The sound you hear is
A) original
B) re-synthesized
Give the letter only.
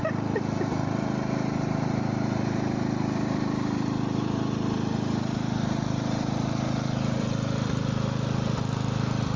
B